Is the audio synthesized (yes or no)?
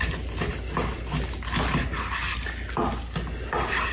no